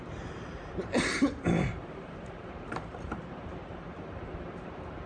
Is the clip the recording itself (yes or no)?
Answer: no